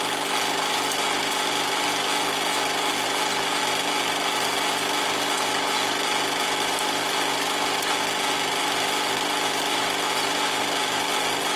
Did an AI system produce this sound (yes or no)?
no